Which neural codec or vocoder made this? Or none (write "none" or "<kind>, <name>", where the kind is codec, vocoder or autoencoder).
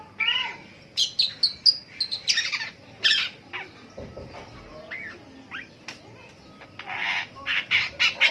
none